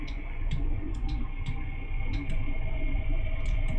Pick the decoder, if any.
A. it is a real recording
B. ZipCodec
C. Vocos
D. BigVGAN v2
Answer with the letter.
C